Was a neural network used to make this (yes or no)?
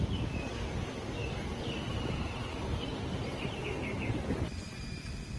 no